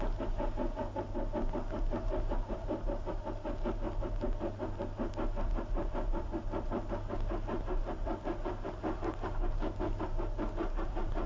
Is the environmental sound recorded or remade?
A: recorded